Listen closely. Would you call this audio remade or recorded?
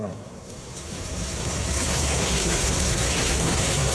remade